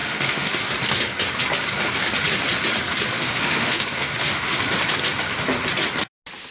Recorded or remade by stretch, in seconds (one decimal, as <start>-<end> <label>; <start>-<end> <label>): 0.0-0.7 remade; 0.7-3.1 recorded; 3.1-4.6 remade; 4.6-6.5 recorded